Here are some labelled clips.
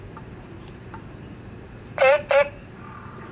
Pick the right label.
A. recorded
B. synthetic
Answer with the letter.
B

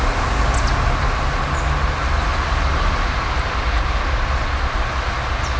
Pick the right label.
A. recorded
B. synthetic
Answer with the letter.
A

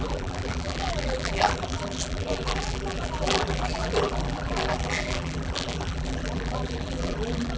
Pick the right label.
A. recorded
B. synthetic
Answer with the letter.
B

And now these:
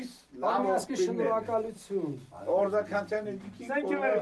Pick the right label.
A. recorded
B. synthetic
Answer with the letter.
A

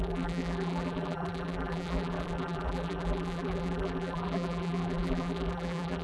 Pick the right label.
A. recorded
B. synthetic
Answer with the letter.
B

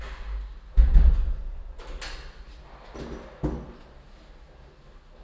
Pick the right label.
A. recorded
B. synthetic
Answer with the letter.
A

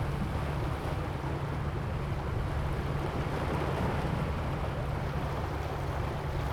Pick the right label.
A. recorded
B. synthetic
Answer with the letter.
A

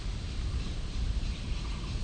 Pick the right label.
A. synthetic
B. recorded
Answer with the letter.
A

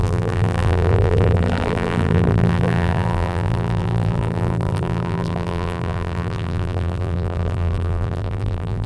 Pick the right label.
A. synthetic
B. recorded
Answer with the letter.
A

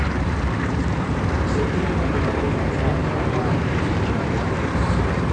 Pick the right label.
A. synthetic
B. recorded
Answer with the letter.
A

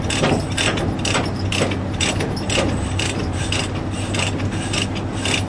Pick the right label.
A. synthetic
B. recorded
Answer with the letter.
B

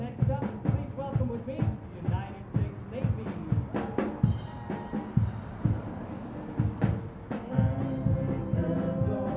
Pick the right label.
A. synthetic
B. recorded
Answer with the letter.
B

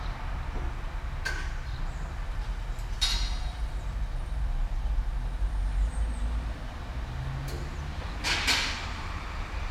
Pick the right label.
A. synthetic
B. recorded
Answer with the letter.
B